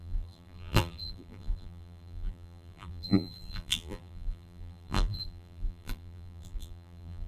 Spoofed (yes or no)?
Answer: yes